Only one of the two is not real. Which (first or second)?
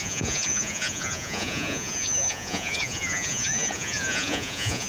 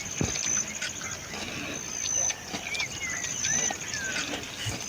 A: first